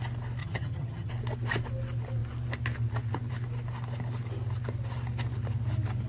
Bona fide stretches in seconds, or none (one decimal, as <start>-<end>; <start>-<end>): 0.0-0.4; 1.1-6.1